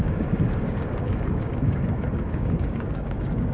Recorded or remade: remade